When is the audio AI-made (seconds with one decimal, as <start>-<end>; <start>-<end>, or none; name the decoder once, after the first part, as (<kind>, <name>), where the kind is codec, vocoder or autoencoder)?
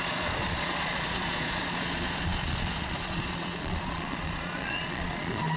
0.0-5.6 (vocoder, Vocos)